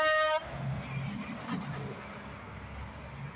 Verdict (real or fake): real